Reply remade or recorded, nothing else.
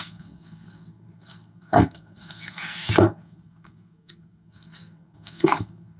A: remade